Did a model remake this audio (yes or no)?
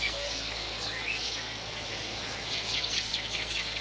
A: yes